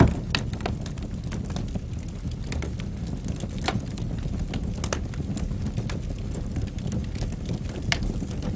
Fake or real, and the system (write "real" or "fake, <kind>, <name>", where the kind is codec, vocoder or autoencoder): real